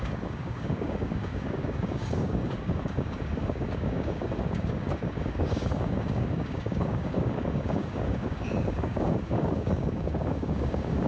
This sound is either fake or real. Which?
fake